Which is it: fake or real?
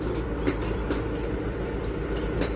real